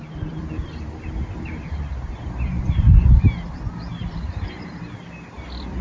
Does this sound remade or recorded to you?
remade